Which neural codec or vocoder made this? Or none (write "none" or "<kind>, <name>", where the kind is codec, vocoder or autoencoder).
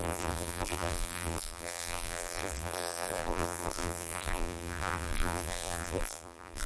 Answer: vocoder, BigVGAN v2